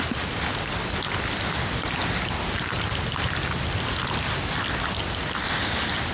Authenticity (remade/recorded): recorded